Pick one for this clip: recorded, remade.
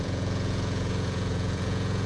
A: remade